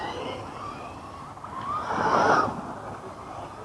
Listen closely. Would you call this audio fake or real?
real